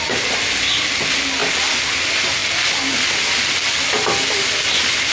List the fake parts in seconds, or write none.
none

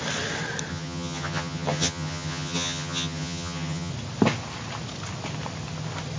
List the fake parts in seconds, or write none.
0.7-3.9 (vocoder, HiFi-GAN)

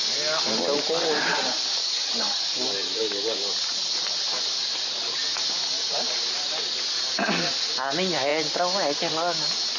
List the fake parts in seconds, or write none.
1.8-2.4 (vocoder, HiFi-GAN)

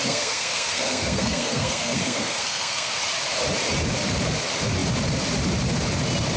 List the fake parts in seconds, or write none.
0.0-3.0 (codec, SNAC)